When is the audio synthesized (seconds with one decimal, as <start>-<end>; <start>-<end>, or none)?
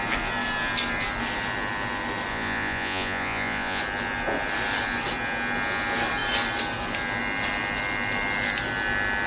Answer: 2.3-3.8